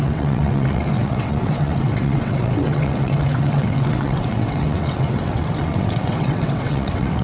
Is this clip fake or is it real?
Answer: fake